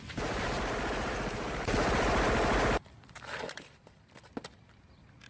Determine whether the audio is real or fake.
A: fake